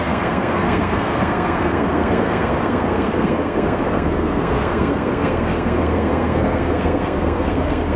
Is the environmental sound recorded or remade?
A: remade